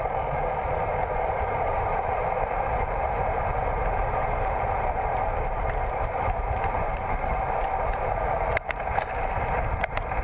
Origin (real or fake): fake